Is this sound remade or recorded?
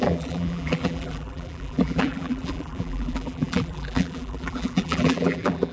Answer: remade